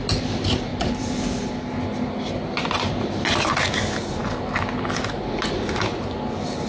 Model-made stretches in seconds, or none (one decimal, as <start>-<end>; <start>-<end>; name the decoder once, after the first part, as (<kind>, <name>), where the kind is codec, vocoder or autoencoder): 0.7-1.5 (vocoder, BigVGAN v2)